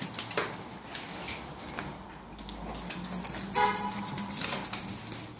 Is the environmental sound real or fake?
real